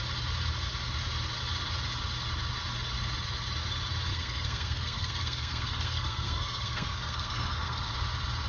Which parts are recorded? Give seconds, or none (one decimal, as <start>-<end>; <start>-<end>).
0.0-4.1; 7.9-8.5